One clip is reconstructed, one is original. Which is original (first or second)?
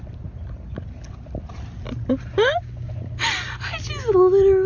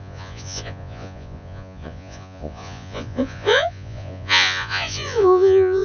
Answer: first